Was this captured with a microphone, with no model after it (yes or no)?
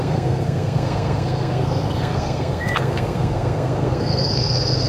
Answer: no